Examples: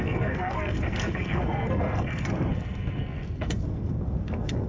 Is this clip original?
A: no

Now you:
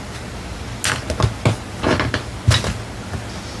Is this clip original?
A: yes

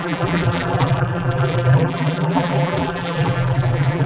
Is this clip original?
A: no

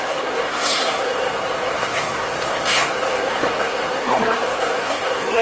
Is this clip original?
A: no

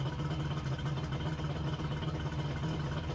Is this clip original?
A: yes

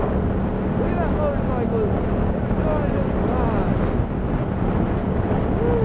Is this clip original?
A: yes